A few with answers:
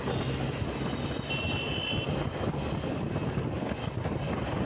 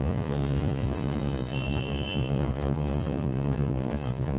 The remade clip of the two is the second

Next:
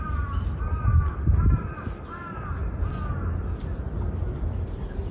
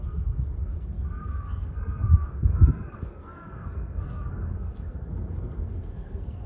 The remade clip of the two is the second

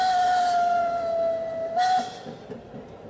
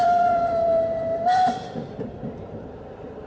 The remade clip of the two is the second